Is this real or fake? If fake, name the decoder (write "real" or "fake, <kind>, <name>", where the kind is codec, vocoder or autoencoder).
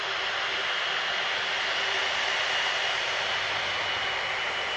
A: real